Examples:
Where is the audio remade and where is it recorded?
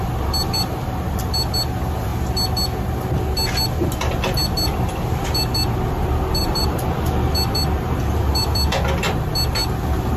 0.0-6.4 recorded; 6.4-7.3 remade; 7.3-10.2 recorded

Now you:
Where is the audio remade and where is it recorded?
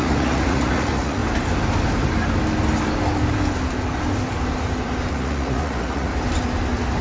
0.0-1.2 remade; 1.2-5.1 recorded; 5.1-6.1 remade; 6.1-7.0 recorded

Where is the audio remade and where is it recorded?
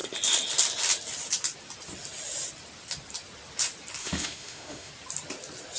0.0-4.0 recorded; 4.0-4.9 remade; 4.9-5.8 recorded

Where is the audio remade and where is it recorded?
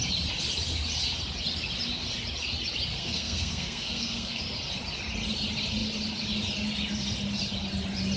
0.0-3.0 recorded; 3.0-4.4 remade; 4.4-8.2 recorded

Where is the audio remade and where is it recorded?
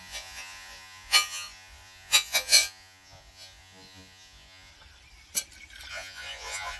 0.0-4.7 remade; 4.7-5.9 recorded; 5.9-6.8 remade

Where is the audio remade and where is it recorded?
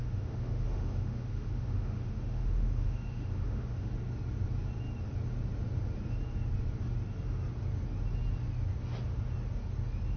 0.0-3.9 remade; 3.9-10.2 recorded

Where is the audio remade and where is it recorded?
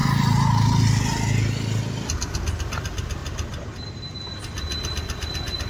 0.0-5.7 recorded